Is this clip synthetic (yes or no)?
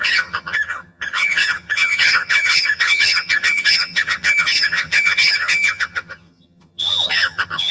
yes